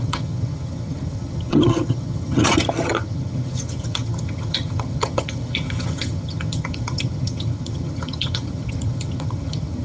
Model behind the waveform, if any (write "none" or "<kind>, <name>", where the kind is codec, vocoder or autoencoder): vocoder, HiFi-GAN